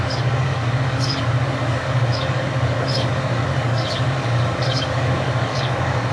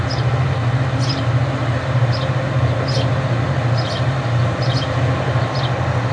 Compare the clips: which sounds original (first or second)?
second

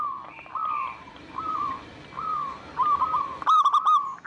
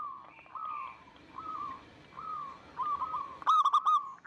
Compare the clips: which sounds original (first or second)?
first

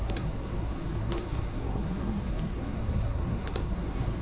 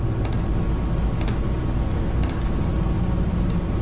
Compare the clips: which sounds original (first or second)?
second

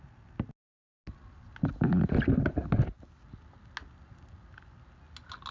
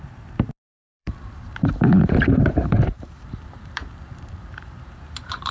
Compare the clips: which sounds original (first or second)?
first